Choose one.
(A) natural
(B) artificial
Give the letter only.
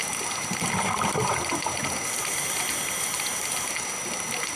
A